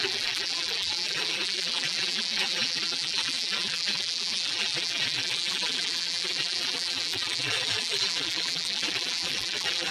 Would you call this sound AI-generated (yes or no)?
yes